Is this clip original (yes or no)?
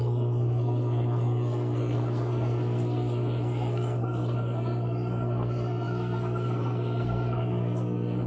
no